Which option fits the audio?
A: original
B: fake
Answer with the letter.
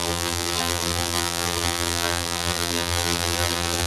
B